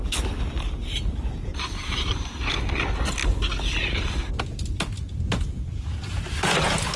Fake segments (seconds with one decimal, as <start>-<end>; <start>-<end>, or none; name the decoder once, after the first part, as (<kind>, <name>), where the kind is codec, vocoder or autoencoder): 1.5-2.5 (vocoder, BigVGAN v2)